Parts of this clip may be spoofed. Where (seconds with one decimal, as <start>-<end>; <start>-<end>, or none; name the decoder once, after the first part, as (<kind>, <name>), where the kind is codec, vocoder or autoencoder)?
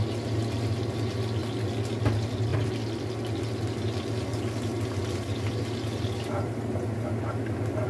none